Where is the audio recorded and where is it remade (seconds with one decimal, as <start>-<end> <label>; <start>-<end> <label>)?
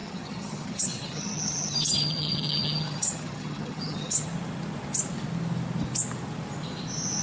0.0-4.3 remade; 4.3-7.2 recorded